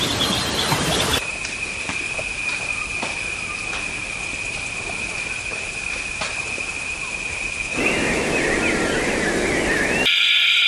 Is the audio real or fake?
fake